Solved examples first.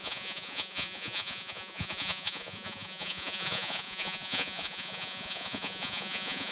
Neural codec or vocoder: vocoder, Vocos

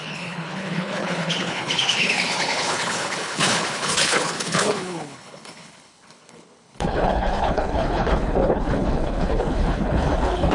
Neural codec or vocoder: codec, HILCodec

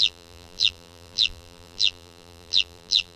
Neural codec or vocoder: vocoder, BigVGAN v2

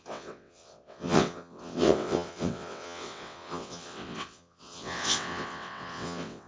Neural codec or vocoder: vocoder, WaveNeXt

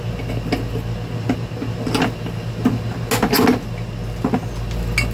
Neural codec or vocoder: none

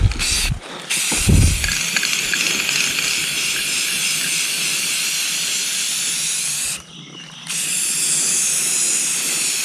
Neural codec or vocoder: none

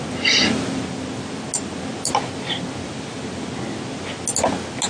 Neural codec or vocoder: none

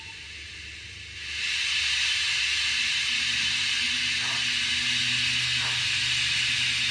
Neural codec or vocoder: none